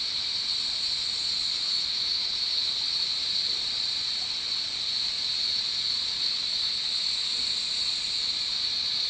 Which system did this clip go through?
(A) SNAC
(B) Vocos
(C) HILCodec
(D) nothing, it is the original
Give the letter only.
D